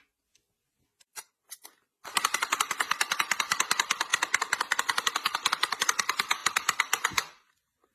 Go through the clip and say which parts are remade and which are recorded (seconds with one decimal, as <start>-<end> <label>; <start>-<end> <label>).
0.0-7.9 recorded